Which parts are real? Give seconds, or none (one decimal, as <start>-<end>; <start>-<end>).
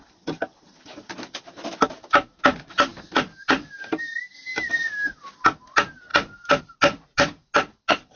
0.0-8.2